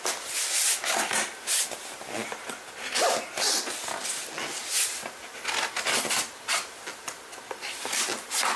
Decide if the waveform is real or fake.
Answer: real